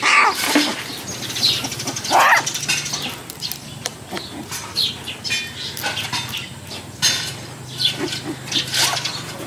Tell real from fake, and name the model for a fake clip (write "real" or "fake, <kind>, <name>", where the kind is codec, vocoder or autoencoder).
real